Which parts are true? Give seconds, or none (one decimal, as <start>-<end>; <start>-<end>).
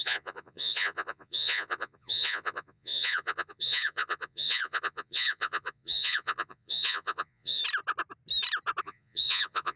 7.6-8.8